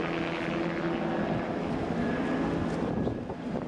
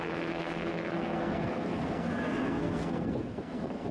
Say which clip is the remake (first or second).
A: second